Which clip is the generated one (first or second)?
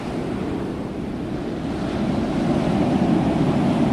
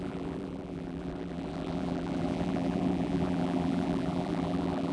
second